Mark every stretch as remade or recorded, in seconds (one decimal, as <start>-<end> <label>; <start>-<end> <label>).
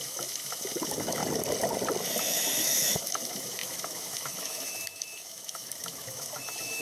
0.0-1.2 remade; 1.2-2.2 recorded; 2.2-6.8 remade